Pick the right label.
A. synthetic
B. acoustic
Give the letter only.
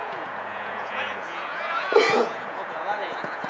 A